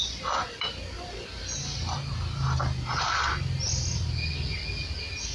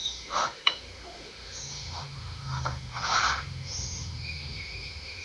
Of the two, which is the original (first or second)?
first